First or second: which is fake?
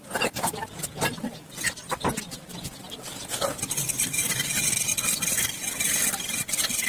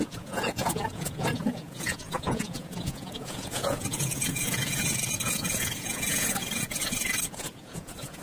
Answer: second